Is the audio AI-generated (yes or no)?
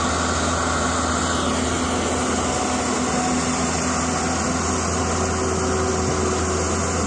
no